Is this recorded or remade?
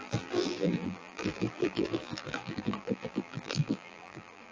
remade